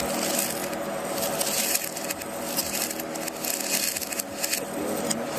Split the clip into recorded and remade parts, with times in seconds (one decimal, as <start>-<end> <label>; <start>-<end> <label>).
0.0-0.6 recorded; 0.6-2.0 remade; 2.0-2.6 recorded; 2.6-3.5 remade; 3.5-5.4 recorded